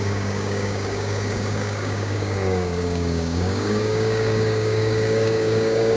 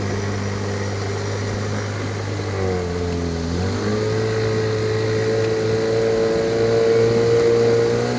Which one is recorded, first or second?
second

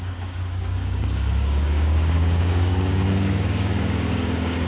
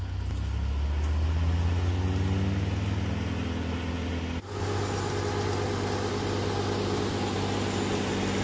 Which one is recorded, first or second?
second